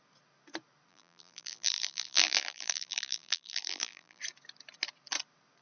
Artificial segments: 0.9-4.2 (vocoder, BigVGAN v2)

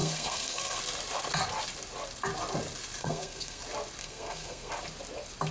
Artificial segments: 0.0-0.8 (codec, SNAC); 3.0-3.6; 4.0-4.7

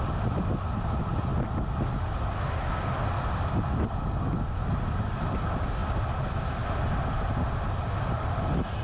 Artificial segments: none

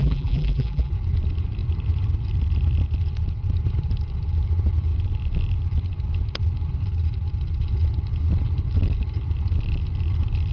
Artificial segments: 0.0-0.9 (vocoder, BigVGAN v2)

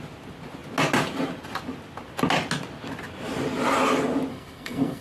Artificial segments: 4.3-5.0 (codec, SNAC)

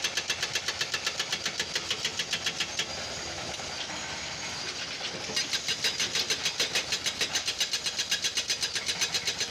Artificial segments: none

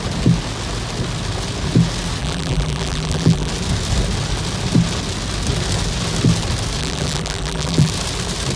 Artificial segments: 2.2-3.5 (vocoder, BigVGAN v2); 6.8-7.9